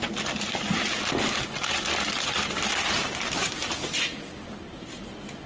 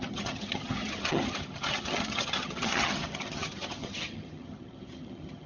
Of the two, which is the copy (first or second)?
second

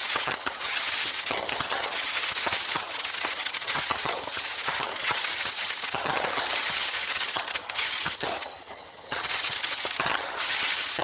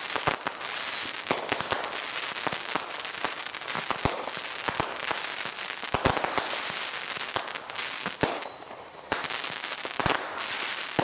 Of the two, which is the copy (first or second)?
first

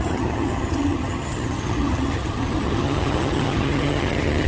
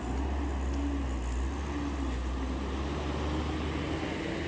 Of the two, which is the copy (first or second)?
first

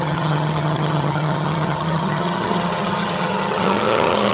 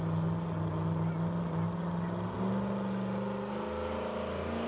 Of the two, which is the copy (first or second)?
first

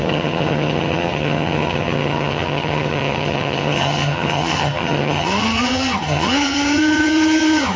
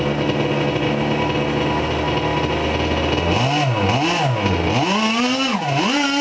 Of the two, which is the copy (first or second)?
first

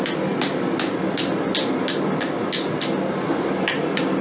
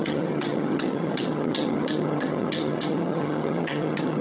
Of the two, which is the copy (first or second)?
second